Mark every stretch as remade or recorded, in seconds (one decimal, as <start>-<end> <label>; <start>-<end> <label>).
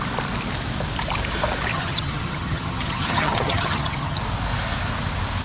0.0-1.7 recorded; 1.7-4.2 remade; 4.2-5.4 recorded